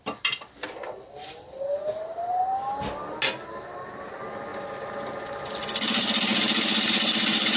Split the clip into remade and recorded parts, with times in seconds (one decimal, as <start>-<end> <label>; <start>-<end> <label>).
0.0-7.6 recorded